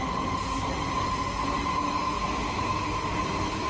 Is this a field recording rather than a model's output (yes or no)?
yes